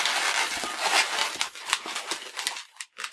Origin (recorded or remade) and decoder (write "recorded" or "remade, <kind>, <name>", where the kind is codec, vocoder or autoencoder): recorded